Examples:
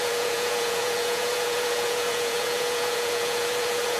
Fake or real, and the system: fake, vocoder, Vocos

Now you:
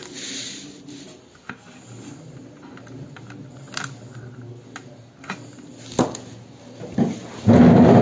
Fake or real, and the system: real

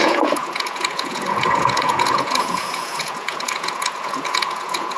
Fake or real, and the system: fake, vocoder, Vocos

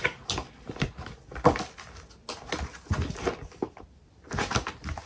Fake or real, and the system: real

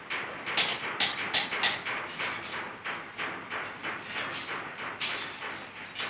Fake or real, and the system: real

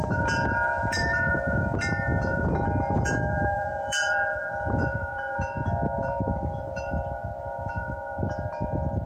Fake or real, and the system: fake, vocoder, Vocos